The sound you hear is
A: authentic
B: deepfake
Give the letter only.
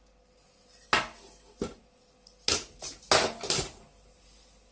A